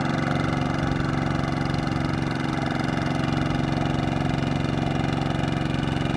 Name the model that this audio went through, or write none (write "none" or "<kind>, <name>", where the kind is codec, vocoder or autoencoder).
none